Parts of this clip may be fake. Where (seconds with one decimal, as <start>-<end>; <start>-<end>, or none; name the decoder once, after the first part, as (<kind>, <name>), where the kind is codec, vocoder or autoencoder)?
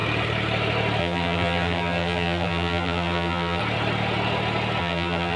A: 1.0-3.6 (vocoder, BigVGAN v2); 4.8-5.4